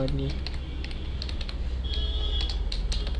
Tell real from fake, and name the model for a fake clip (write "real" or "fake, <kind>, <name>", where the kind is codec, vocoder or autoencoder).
real